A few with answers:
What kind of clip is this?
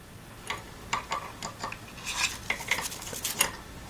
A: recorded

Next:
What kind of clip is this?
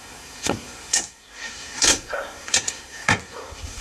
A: remade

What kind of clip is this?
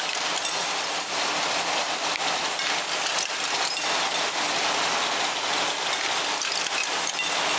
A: recorded